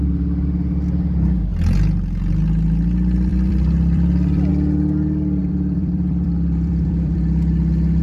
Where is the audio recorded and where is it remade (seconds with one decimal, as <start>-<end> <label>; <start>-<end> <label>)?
0.0-3.3 recorded; 3.3-4.5 remade; 4.5-5.4 recorded; 5.4-7.2 remade; 7.2-8.0 recorded